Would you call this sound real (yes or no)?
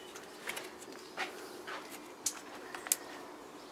yes